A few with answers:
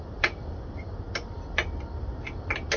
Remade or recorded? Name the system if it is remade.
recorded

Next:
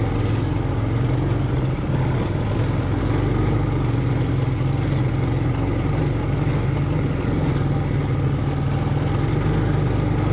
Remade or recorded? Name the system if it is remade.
recorded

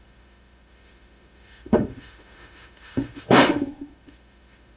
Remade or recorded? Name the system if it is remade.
remade, autoencoder, DAC-VAE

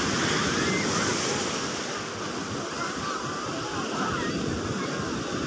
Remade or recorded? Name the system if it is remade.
recorded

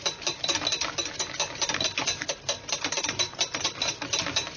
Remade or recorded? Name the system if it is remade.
recorded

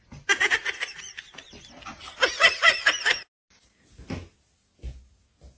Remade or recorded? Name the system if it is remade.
recorded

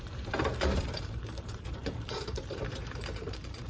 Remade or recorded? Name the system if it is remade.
remade, vocoder, BigVGAN v2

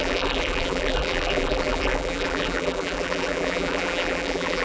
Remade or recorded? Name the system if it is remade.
remade, vocoder, BigVGAN v2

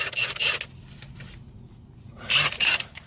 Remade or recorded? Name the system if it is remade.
recorded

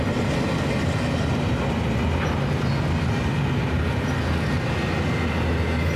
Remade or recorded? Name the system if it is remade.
recorded